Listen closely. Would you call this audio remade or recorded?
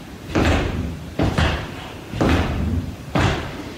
remade